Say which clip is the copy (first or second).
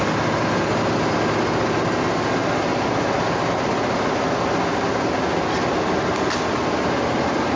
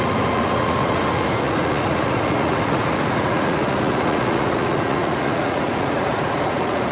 second